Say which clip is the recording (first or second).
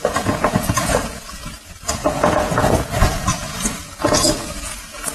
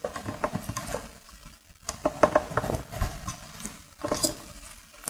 second